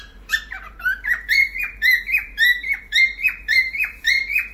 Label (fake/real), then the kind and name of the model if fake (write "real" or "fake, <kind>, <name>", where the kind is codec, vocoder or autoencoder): fake, vocoder, BigVGAN v2